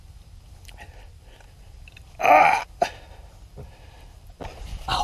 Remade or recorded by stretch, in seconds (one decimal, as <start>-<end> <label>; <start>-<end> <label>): 0.0-5.0 recorded